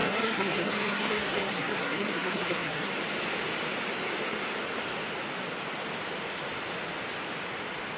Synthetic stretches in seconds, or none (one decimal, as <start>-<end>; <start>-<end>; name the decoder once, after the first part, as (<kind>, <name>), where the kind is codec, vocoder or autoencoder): 0.0-2.9 (codec, SNAC)